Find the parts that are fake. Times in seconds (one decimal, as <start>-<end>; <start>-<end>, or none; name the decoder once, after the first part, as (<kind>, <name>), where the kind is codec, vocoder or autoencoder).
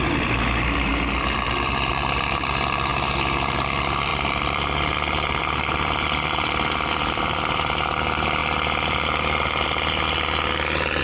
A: 0.0-0.9 (vocoder, BigVGAN v2); 1.9-2.9; 3.5-8.4